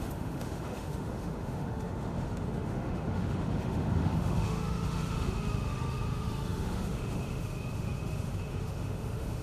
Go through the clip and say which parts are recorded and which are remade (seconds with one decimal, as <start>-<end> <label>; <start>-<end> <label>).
0.0-9.4 remade